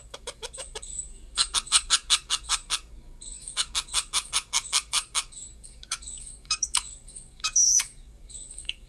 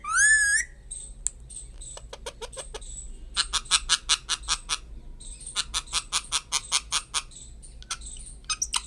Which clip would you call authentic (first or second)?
second